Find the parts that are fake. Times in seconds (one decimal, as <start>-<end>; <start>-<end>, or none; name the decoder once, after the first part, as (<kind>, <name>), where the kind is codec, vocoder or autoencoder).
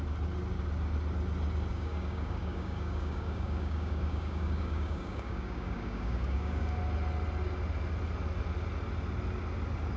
1.7-6.8 (codec, DAC)